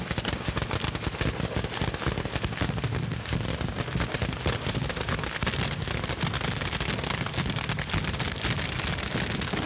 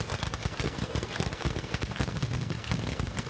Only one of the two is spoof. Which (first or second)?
second